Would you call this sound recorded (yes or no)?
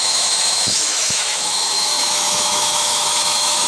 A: no